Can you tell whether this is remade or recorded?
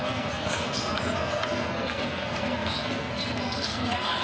remade